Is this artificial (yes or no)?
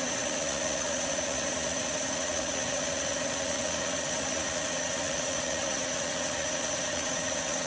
yes